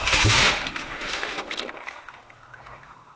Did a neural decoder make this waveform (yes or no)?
yes